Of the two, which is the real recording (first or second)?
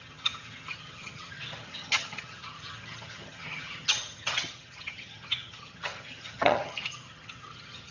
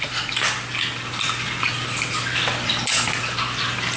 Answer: second